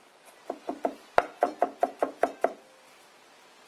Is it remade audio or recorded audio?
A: recorded